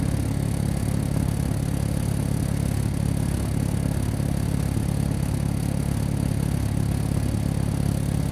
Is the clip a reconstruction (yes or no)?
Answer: no